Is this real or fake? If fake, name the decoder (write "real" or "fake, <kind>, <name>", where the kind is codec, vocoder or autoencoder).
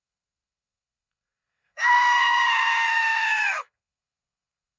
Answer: fake, codec, SNAC